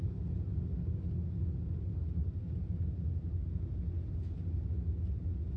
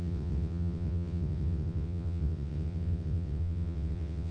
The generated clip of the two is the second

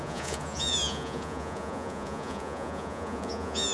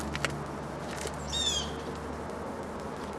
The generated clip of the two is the first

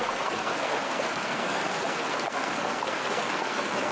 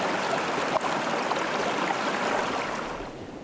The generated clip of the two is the first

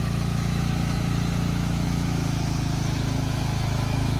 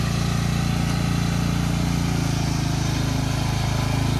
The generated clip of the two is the first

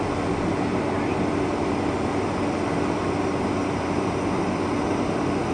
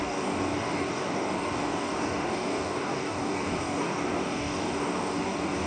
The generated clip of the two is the second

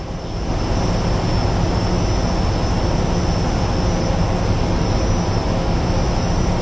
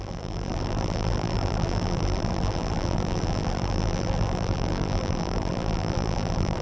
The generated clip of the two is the second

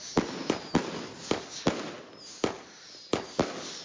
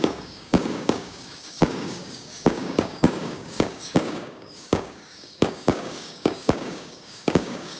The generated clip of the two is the second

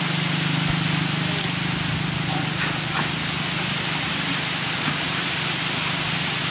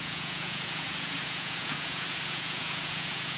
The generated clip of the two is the second